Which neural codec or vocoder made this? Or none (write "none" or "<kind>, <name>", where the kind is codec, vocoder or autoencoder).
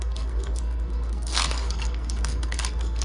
codec, SNAC